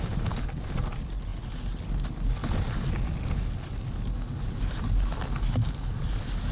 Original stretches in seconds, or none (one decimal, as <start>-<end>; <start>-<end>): 0.0-6.5